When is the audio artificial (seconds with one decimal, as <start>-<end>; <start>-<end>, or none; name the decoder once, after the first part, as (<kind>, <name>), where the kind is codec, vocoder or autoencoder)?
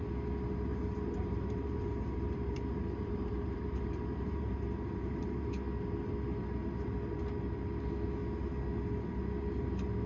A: 0.7-5.5 (vocoder, BigVGAN v2)